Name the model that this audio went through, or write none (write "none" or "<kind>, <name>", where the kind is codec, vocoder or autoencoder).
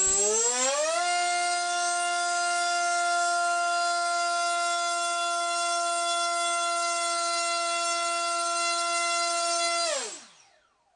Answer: none